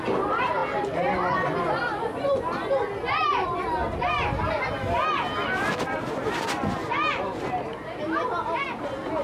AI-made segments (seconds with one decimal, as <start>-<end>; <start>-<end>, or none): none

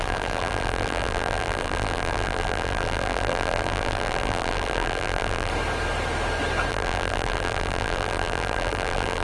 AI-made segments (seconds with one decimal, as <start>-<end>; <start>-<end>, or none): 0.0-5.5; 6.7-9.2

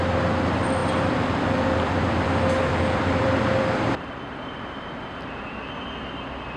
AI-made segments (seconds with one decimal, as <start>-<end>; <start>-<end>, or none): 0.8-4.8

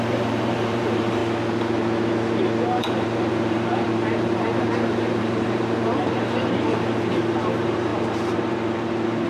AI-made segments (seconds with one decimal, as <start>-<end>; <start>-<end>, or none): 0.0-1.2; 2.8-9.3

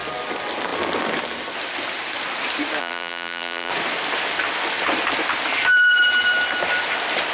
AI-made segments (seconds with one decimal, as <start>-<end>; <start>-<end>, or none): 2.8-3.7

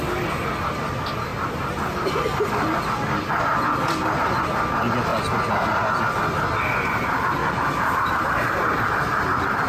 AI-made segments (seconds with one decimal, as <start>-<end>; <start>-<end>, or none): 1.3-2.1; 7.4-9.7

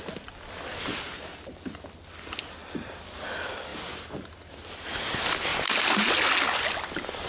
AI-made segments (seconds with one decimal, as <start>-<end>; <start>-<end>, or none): 2.6-3.2